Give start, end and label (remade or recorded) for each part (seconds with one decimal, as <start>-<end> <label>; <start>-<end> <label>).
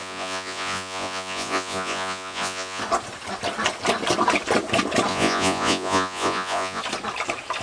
0.0-2.8 remade; 2.8-5.1 recorded; 5.1-6.8 remade; 6.8-7.6 recorded